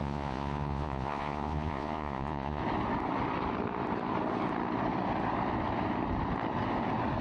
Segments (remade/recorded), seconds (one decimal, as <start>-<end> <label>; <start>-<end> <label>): 0.0-2.6 remade; 2.6-7.2 recorded